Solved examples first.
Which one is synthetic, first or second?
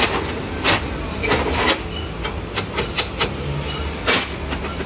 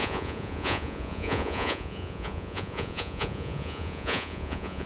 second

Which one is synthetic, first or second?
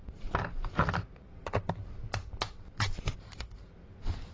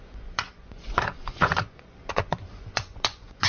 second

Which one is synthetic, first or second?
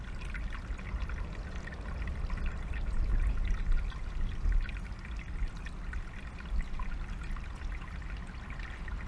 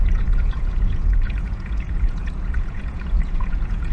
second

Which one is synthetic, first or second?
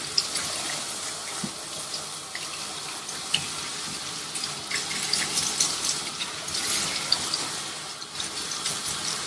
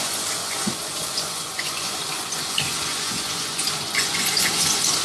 second